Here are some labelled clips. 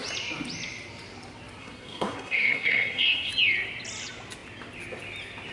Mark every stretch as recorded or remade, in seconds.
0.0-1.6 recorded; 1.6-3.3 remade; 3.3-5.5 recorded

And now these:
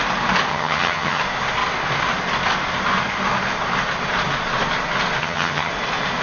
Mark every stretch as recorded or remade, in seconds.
0.0-0.5 recorded; 0.5-1.2 remade; 1.2-5.2 recorded; 5.2-5.7 remade; 5.7-6.2 recorded

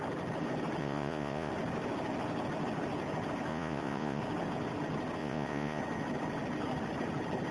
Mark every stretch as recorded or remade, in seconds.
0.0-0.8 recorded; 0.8-1.5 remade; 1.5-3.5 recorded; 3.5-4.2 remade; 4.2-5.2 recorded; 5.2-5.8 remade; 5.8-7.5 recorded

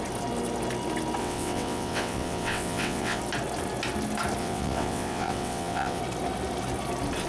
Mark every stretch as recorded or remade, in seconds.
0.0-1.2 recorded; 1.2-3.2 remade; 3.2-4.4 recorded; 4.4-6.0 remade; 6.0-7.3 recorded

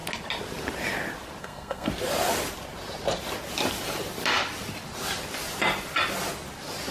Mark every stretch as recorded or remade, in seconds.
0.0-1.4 recorded; 1.4-1.9 remade; 1.9-6.9 recorded

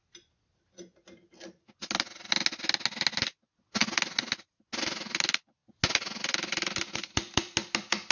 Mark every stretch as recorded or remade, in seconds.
0.0-8.1 recorded